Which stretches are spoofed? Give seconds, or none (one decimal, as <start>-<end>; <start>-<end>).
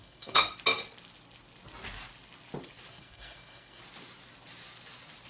0.0-0.5; 2.9-3.8